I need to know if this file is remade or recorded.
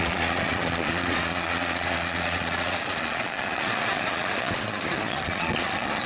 remade